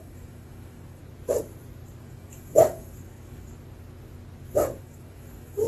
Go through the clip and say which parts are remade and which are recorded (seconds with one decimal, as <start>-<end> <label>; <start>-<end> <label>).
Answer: 0.0-1.0 remade; 1.0-2.0 recorded; 2.0-3.5 remade; 3.5-4.8 recorded; 4.8-5.7 remade